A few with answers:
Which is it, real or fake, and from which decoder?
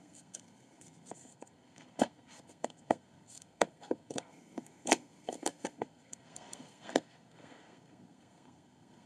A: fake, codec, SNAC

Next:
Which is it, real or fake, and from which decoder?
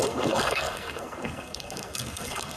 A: fake, codec, SNAC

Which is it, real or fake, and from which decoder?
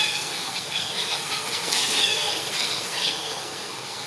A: fake, codec, SNAC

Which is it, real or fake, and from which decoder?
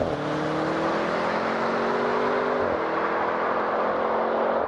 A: real